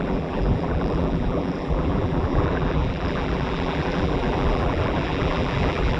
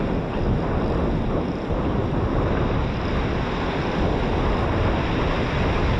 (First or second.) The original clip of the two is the second